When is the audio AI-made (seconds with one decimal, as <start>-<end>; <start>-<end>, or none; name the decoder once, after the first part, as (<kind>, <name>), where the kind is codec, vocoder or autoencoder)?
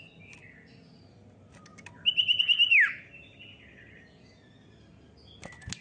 none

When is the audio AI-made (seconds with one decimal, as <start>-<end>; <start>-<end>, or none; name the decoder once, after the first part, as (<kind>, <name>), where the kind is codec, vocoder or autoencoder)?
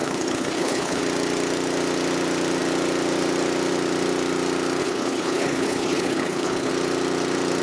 0.0-1.0 (codec, HILCodec); 4.8-6.7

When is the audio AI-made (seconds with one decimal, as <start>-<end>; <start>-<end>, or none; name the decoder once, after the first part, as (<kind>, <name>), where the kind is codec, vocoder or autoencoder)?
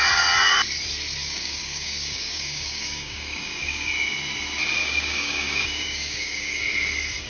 1.2-3.9 (codec, DAC); 4.8-6.6